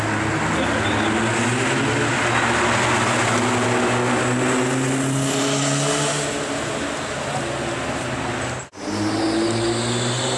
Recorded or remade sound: recorded